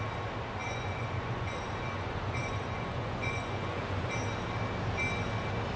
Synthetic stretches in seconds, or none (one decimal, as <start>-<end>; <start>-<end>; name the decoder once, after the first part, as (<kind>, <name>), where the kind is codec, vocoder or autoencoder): 0.6-4.1 (vocoder, Vocos)